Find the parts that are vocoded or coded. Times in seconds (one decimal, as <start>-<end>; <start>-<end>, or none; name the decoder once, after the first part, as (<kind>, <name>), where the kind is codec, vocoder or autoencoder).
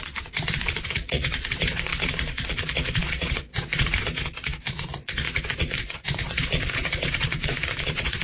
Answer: 0.0-8.2 (vocoder, Vocos)